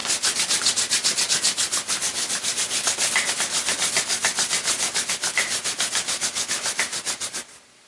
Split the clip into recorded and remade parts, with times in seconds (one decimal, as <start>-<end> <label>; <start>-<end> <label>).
0.0-7.9 recorded